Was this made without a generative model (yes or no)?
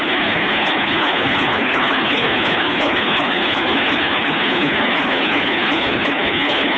no